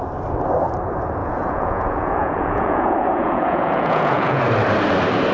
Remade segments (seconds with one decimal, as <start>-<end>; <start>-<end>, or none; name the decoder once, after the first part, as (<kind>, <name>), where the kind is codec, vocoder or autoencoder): 1.2-4.4 (vocoder, Vocos)